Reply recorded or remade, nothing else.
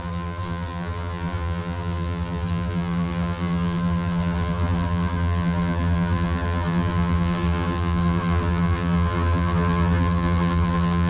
remade